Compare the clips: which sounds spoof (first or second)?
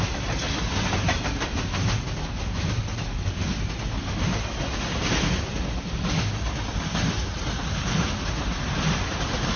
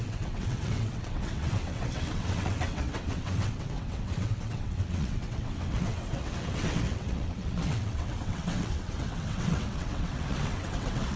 second